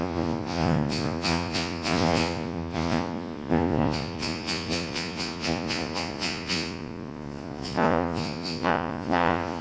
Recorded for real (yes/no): no